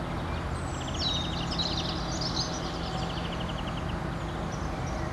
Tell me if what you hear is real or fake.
real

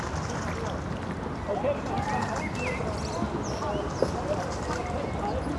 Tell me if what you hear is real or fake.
real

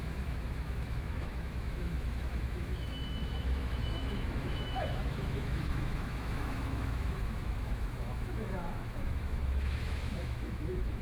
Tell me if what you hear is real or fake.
fake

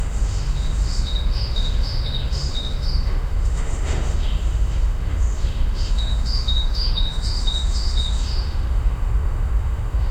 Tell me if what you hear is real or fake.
fake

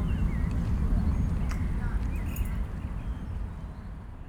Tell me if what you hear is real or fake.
real